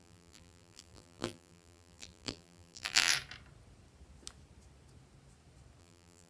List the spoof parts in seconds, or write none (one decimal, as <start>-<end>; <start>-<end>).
0.0-3.1; 5.8-6.3